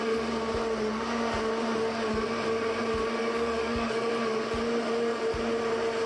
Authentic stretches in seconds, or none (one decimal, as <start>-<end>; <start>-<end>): 0.0-3.2; 4.1-6.1